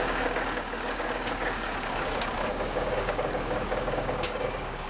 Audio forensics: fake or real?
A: fake